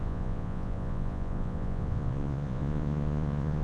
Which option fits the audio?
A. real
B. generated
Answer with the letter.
B